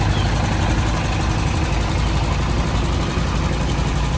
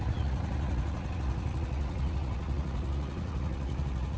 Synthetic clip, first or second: second